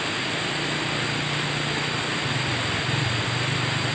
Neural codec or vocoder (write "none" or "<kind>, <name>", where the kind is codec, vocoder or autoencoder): none